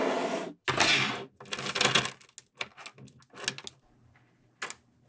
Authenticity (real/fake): real